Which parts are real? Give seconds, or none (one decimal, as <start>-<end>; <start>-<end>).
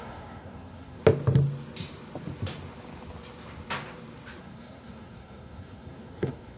1.0-4.4